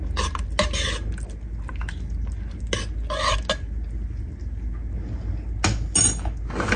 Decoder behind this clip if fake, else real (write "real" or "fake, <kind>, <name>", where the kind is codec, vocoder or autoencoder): real